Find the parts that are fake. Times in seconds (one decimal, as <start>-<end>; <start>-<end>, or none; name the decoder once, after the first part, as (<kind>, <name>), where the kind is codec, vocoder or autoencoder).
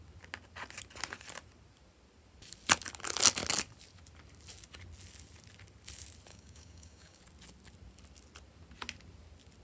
6.3-7.2 (codec, DAC)